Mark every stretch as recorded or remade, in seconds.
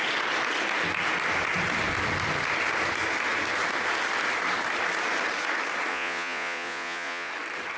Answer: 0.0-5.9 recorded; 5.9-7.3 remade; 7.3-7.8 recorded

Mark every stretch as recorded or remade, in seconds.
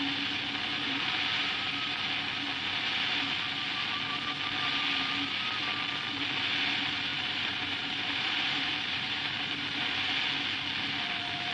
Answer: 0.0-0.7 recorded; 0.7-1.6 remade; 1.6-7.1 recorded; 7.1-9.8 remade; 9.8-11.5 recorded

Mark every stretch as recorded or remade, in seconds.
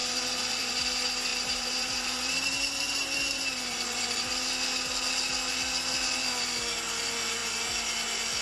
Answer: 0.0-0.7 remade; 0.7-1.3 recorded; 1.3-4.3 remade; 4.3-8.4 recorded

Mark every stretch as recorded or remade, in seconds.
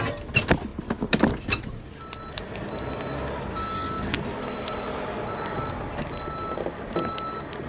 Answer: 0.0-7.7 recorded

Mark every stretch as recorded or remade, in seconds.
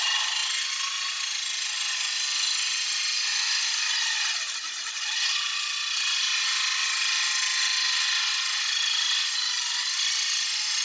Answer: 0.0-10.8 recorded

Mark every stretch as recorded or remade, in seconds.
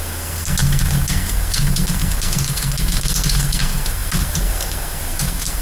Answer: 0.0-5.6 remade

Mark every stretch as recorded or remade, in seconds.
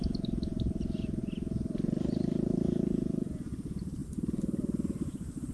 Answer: 0.0-5.5 recorded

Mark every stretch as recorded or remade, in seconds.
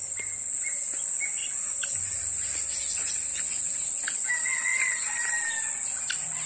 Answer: 0.0-1.4 recorded; 1.4-2.2 remade; 2.2-4.7 recorded; 4.7-5.5 remade; 5.5-6.5 recorded